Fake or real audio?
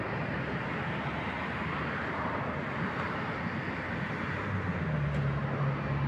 real